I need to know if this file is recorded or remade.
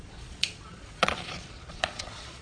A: remade